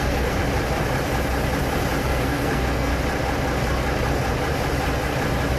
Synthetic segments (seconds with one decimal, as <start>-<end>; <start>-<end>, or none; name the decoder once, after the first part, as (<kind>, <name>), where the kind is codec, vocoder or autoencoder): 0.0-0.4 (codec, SNAC); 2.0-2.9